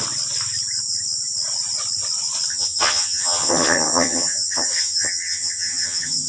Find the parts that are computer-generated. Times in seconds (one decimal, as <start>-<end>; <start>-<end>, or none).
2.5-6.3